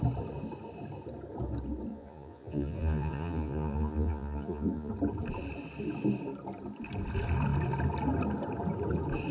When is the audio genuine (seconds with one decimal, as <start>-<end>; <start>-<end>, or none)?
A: 0.0-1.9; 4.9-9.3